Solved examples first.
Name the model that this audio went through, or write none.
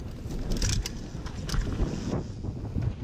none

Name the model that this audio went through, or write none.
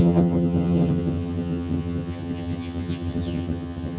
vocoder, HiFi-GAN